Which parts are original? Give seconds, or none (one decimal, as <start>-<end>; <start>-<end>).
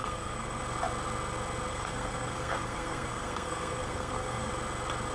0.6-1.7; 4.5-5.1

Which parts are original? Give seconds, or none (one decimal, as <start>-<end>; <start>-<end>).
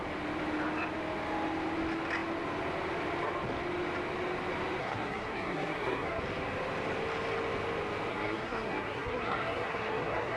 0.0-4.8; 6.2-8.1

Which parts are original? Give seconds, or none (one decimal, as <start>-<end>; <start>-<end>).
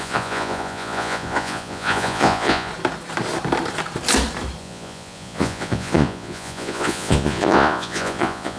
2.7-4.6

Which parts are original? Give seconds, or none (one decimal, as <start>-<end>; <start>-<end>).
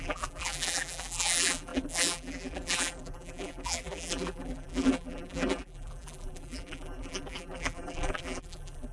none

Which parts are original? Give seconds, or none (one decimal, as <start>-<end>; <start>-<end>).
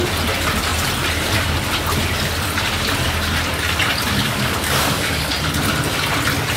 0.0-4.2; 5.3-6.6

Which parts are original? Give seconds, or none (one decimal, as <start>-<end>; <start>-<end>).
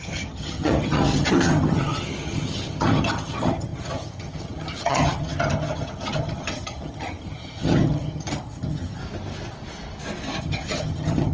9.0-10.4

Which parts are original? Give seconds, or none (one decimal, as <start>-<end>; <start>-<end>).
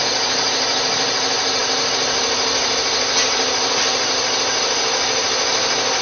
0.0-6.0